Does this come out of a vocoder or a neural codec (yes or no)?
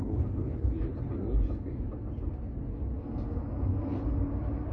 no